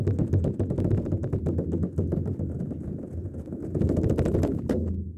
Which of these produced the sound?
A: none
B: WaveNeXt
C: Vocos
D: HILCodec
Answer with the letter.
A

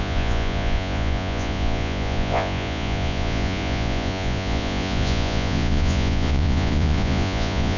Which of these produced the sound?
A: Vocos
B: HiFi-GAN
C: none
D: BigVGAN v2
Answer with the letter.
A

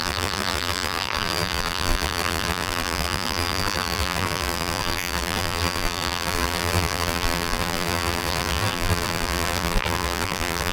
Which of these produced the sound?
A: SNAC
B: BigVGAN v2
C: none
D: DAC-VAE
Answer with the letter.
B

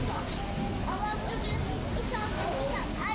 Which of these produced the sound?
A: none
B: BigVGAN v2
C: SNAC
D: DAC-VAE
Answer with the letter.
A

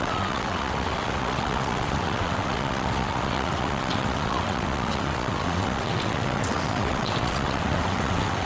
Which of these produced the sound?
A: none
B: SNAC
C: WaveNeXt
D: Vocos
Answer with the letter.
C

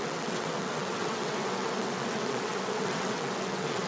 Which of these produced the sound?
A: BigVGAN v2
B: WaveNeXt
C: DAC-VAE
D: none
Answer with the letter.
B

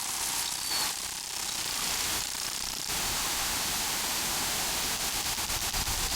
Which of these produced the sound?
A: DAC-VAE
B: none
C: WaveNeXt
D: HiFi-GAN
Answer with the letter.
B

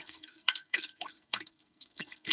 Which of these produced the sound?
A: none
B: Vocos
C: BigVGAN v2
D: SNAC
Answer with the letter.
D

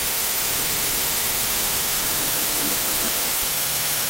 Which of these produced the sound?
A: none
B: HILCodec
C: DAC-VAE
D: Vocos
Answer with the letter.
C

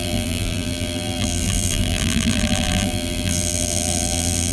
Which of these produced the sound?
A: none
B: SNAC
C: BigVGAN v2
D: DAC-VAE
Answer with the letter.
C